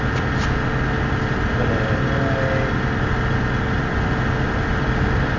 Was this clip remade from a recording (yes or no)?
no